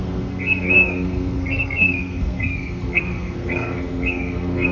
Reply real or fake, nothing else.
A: fake